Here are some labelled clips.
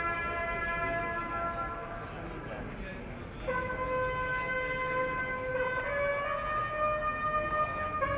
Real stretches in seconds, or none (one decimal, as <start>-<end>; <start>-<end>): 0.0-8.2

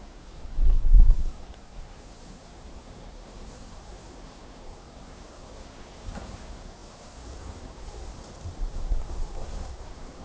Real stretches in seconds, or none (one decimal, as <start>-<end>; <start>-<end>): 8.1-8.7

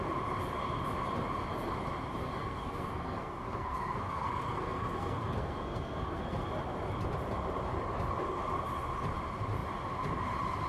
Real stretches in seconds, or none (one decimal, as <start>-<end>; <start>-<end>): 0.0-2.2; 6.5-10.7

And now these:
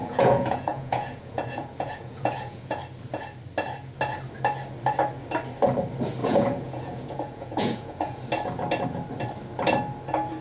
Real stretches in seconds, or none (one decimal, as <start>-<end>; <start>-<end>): 2.8-6.2; 8.2-10.4